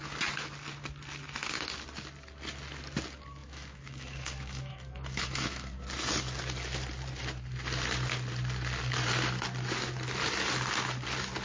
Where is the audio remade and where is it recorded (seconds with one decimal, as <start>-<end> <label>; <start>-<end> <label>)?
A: 0.0-3.4 recorded; 3.4-5.7 remade; 5.7-11.4 recorded

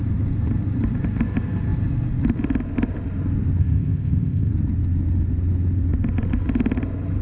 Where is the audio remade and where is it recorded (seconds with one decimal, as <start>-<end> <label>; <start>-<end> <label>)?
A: 0.0-3.6 recorded; 3.6-4.5 remade; 4.5-7.2 recorded

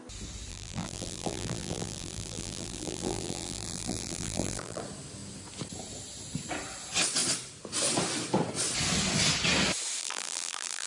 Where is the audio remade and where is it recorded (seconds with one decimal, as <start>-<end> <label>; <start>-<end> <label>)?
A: 0.0-0.5 recorded; 0.5-4.8 remade; 4.8-10.0 recorded; 10.0-10.9 remade

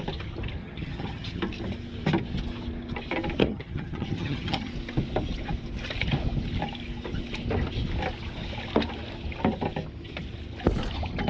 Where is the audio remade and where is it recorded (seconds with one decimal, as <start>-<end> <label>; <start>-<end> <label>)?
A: 0.0-0.6 recorded; 0.6-1.4 remade; 1.4-3.4 recorded; 3.4-4.7 remade; 4.7-11.3 recorded

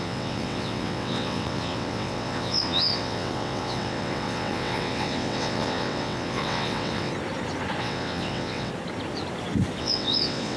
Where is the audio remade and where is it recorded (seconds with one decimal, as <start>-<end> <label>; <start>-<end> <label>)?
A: 0.0-7.1 remade; 7.1-7.8 recorded; 7.8-8.7 remade; 8.7-9.8 recorded; 9.8-10.6 remade

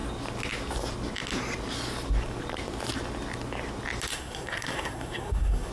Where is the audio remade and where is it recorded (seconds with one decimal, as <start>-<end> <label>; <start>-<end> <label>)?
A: 0.0-4.1 recorded; 4.1-5.7 remade